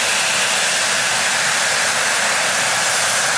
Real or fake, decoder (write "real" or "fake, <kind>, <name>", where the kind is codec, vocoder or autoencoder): real